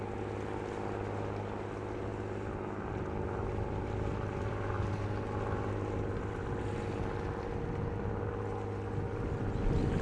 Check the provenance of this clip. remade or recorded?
recorded